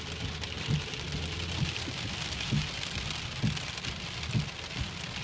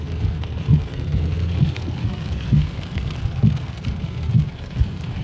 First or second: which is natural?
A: first